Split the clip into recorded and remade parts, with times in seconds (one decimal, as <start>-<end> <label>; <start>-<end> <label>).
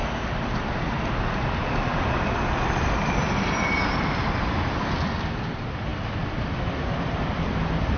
0.0-8.0 recorded